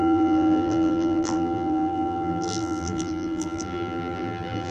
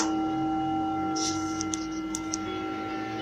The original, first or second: second